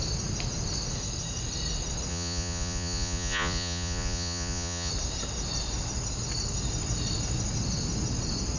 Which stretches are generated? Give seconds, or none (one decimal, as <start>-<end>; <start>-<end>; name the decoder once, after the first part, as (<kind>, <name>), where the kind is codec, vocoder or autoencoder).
2.1-4.9 (vocoder, Vocos)